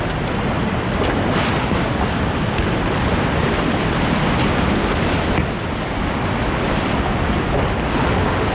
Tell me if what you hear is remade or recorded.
recorded